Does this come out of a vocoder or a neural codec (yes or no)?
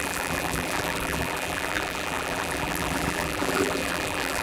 yes